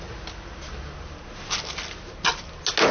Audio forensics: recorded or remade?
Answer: recorded